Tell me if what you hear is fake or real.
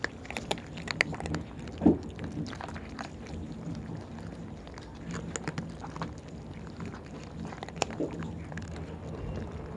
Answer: real